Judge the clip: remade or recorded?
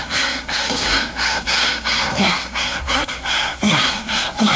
remade